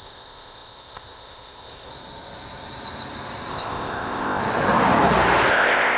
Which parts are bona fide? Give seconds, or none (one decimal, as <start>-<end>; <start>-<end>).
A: 1.9-3.5; 4.4-5.5